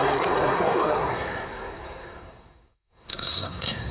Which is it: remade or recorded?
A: remade